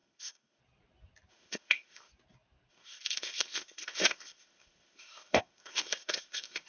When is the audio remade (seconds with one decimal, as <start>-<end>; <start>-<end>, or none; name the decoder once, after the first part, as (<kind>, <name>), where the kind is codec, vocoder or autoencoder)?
0.0-0.6 (codec, ZipCodec); 1.3-2.1; 2.7-6.7